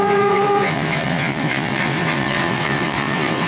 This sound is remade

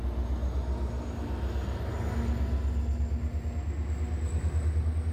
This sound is recorded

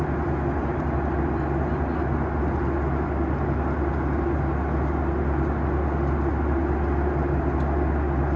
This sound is recorded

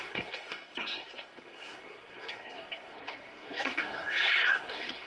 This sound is remade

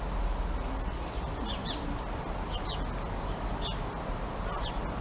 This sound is recorded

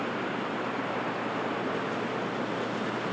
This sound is recorded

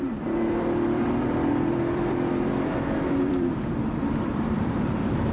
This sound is remade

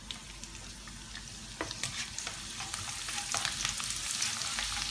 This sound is recorded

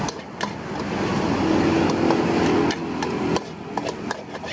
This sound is recorded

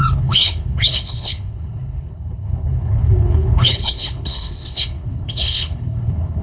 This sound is remade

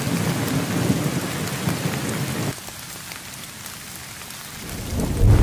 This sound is recorded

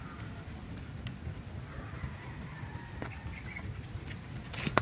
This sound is recorded